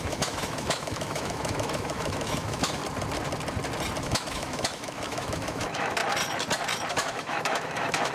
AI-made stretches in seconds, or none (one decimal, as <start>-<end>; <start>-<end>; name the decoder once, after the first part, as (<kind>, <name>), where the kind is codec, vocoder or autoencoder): 0.0-2.8 (autoencoder, DAC-VAE); 4.0-6.0; 6.9-8.1